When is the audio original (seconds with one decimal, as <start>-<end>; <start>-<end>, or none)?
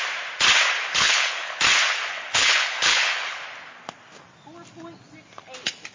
0.0-0.9; 1.6-2.1; 3.4-5.9